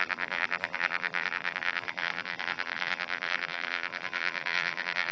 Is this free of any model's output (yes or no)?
no